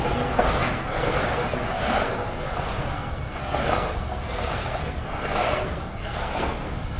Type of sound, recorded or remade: remade